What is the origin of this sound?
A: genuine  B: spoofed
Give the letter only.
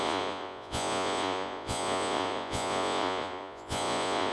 B